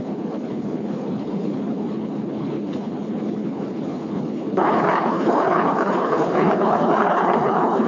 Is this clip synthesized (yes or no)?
yes